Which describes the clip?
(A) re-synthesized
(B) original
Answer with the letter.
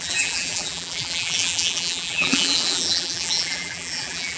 A